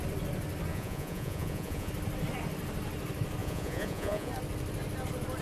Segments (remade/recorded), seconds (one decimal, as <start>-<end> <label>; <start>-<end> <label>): 0.0-0.7 recorded; 0.7-1.9 remade; 1.9-3.4 recorded; 3.4-4.3 remade; 4.3-5.4 recorded